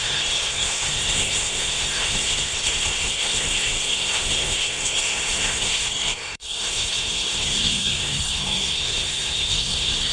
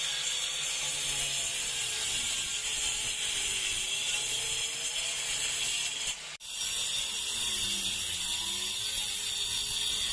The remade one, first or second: first